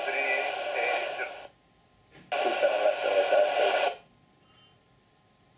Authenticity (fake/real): real